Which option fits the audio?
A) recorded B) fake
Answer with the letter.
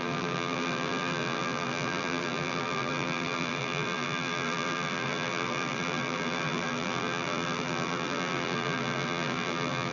B